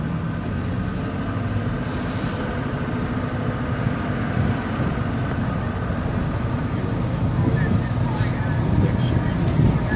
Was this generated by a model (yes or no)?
no